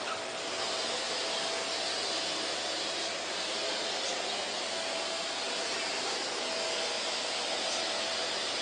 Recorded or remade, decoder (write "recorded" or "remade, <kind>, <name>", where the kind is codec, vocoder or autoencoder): recorded